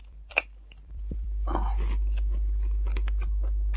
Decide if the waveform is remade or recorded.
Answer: remade